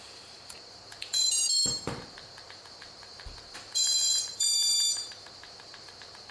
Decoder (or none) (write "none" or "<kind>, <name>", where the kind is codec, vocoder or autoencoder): vocoder, BigVGAN v2